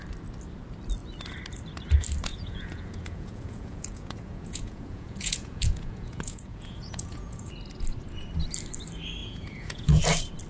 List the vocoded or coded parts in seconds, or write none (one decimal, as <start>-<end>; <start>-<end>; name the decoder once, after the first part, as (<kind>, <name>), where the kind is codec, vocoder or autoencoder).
2.3-7.5 (vocoder, Vocos); 9.2-10.0